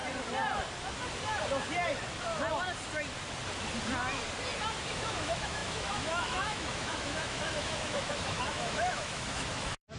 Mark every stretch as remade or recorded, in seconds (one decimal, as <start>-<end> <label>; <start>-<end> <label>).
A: 0.0-4.9 recorded; 4.9-10.0 remade